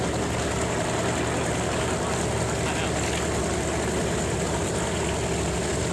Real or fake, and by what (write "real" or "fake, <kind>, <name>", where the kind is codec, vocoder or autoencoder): real